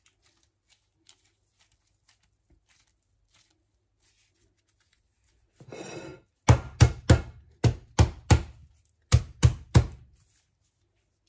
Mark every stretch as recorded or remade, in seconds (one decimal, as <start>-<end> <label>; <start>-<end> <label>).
0.0-11.3 recorded